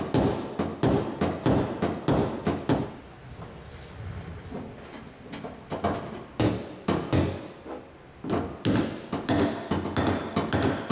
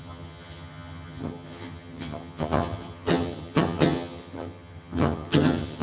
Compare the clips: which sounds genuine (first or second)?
first